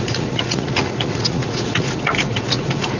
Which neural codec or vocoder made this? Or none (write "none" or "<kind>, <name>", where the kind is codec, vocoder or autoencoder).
vocoder, Vocos